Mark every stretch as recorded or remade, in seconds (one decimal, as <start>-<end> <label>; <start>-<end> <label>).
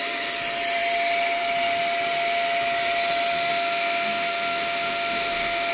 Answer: 0.0-3.5 recorded; 3.5-5.7 remade